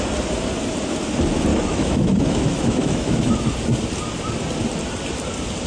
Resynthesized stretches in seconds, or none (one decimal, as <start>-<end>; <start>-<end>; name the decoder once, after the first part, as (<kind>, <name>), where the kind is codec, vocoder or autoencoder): 1.5-3.3 (autoencoder, DAC-VAE)